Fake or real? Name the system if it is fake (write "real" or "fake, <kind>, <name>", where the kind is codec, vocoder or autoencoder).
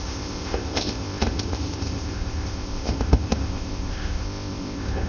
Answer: fake, codec, ZipCodec